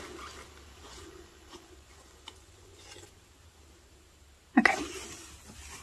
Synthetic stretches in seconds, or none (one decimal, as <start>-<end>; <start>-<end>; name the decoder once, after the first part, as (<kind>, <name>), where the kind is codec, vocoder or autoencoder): 0.8-3.1 (vocoder, Vocos)